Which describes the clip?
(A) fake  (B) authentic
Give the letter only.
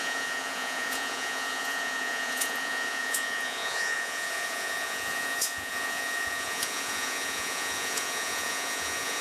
A